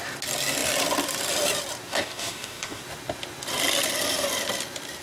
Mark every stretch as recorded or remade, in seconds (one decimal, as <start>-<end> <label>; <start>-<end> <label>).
0.0-1.9 recorded; 1.9-2.8 remade; 2.8-5.0 recorded